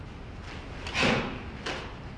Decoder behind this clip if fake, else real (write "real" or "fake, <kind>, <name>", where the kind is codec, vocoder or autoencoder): real